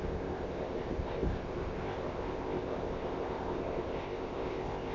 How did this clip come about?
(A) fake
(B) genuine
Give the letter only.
A